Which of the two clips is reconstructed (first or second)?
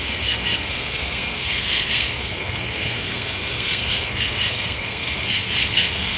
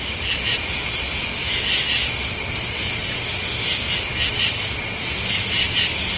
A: first